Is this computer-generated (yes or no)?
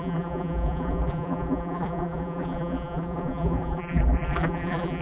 yes